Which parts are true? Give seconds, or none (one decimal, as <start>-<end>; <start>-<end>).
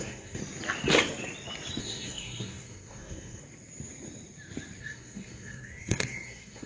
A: 0.4-1.8; 3.4-4.8